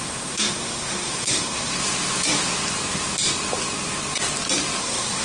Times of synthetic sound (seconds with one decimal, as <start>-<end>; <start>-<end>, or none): 0.0-1.7; 4.8-5.2